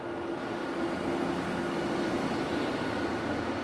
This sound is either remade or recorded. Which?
recorded